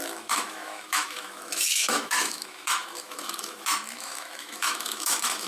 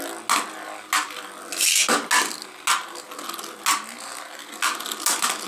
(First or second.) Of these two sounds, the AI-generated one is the first